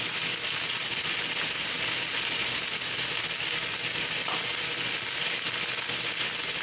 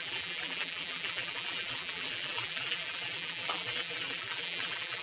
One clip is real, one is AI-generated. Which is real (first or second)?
first